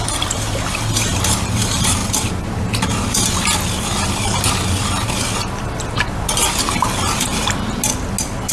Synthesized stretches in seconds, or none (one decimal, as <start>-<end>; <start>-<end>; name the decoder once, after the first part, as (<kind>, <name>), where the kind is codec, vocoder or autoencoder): none